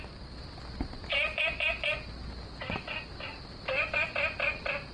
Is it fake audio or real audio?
real